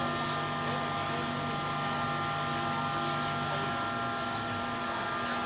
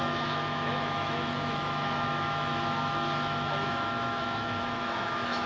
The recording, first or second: first